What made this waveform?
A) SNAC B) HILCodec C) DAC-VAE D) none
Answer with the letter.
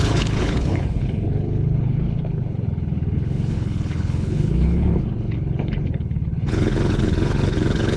B